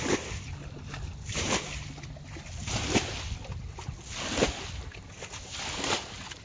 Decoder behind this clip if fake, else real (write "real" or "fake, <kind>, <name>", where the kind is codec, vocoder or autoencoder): real